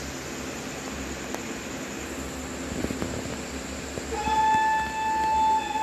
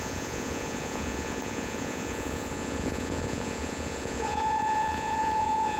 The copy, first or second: second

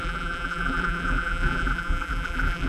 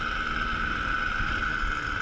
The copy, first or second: first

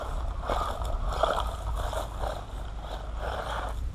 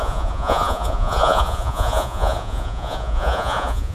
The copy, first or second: second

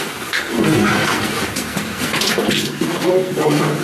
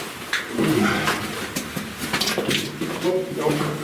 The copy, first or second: first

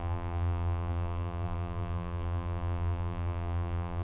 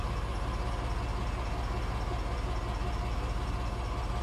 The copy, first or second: first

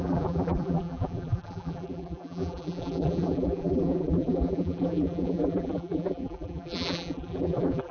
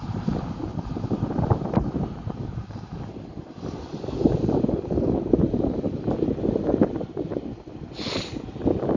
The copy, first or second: first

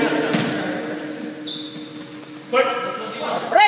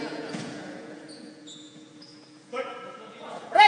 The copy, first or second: second